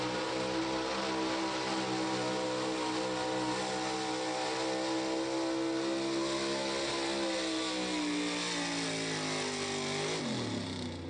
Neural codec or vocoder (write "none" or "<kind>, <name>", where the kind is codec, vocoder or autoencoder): none